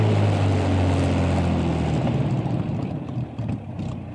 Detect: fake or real real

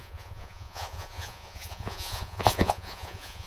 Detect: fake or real fake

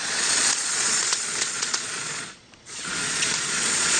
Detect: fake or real fake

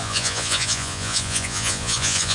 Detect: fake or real fake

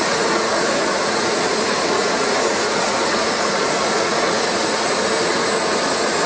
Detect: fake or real fake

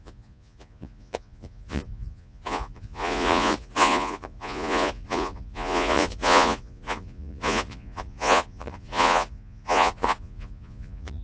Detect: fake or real fake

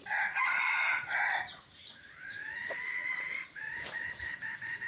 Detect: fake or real fake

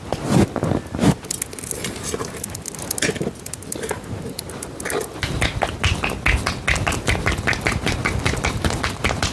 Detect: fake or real real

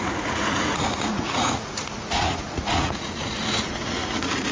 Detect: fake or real fake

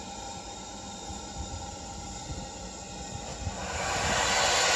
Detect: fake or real real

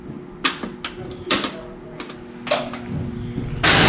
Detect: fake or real real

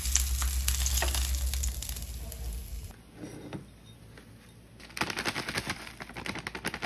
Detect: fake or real real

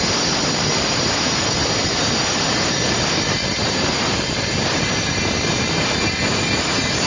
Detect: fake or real real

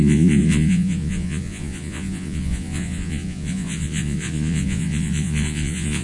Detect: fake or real fake